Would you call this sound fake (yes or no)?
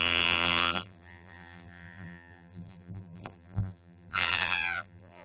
yes